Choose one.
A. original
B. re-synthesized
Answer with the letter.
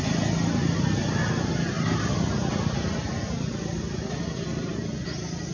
A